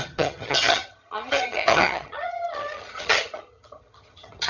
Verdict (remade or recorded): remade